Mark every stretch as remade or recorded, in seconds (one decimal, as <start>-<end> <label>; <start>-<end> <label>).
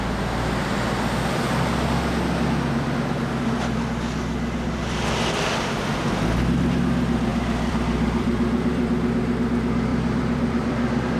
0.0-7.3 recorded; 7.3-9.4 remade; 9.4-9.9 recorded; 9.9-11.2 remade